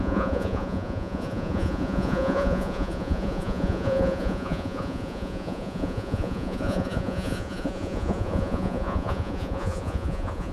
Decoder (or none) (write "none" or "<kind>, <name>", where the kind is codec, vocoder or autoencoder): vocoder, Vocos